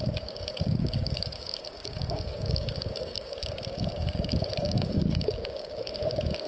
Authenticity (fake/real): fake